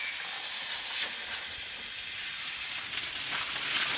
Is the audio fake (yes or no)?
no